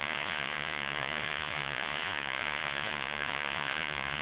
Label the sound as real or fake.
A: fake